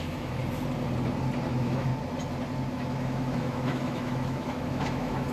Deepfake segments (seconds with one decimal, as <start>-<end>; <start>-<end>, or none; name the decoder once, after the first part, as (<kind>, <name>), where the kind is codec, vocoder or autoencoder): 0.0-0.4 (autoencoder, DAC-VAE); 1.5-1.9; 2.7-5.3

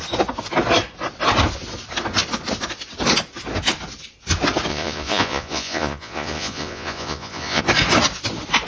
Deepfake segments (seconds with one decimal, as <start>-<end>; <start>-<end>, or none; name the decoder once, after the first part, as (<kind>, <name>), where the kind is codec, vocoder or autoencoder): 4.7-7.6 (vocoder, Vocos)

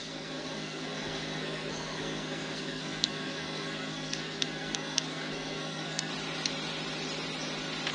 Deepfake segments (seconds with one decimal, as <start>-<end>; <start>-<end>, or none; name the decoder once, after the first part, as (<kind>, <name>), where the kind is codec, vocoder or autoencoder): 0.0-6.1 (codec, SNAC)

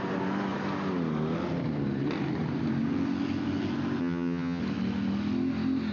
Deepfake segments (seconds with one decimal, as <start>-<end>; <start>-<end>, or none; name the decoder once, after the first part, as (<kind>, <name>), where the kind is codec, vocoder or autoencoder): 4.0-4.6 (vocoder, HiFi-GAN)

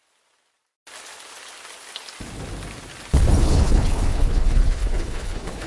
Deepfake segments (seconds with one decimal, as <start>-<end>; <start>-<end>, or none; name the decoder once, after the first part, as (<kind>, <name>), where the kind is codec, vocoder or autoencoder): 3.4-5.7 (codec, HILCodec)